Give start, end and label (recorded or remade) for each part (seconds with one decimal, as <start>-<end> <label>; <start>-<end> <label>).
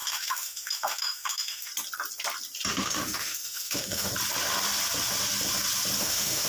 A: 0.0-1.7 remade; 1.7-2.7 recorded; 2.7-4.1 remade; 4.1-6.0 recorded; 6.0-6.5 remade